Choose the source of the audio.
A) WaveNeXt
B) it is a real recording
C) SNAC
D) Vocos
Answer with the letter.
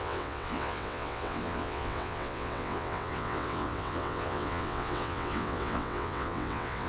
A